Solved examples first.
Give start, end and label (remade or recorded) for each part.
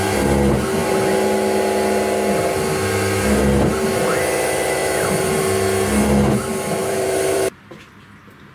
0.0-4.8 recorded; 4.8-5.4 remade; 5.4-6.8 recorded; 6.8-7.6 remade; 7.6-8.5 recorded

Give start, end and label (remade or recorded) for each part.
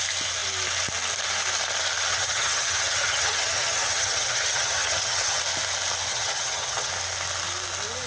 0.0-2.1 recorded; 2.1-5.4 remade; 5.4-6.1 recorded; 6.1-6.9 remade; 6.9-8.1 recorded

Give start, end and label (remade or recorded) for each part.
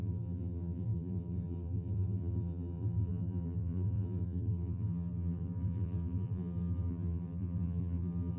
0.0-8.4 remade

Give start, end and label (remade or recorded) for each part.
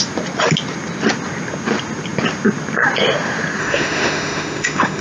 0.0-3.6 recorded; 3.6-5.0 remade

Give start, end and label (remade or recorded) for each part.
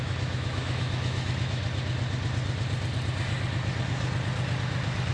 0.0-1.6 remade; 1.6-5.1 recorded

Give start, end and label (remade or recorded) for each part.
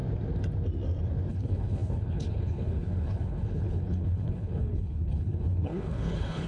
0.0-1.3 recorded; 1.3-6.5 remade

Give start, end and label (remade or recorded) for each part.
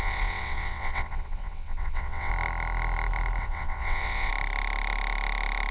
0.0-2.3 remade; 2.3-3.4 recorded; 3.4-4.3 remade; 4.3-5.7 recorded